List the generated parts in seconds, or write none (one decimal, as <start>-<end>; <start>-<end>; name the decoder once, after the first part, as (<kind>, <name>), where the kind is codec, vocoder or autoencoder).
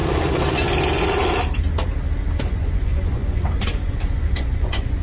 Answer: 2.4-5.0 (vocoder, Vocos)